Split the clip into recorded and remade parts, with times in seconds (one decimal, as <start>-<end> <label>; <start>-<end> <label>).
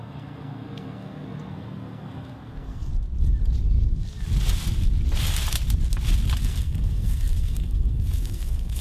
0.0-2.9 remade; 2.9-6.4 recorded; 6.4-8.8 remade